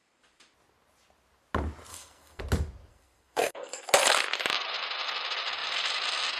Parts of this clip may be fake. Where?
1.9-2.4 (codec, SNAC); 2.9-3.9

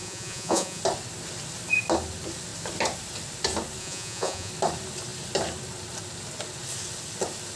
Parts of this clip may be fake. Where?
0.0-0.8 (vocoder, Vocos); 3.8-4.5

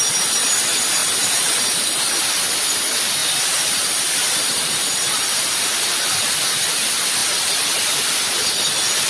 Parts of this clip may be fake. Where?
1.0-2.1 (vocoder, BigVGAN v2); 3.2-5.6

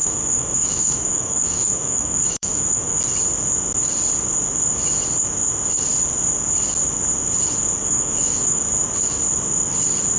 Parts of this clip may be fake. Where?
0.0-3.0 (autoencoder, DAC-VAE); 7.8-8.6